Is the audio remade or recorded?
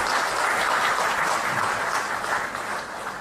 recorded